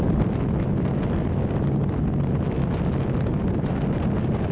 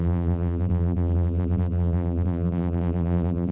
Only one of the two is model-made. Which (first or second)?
second